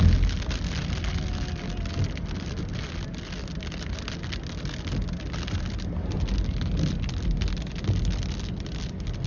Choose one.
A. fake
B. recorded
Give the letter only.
B